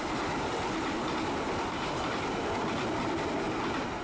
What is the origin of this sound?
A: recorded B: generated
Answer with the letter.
A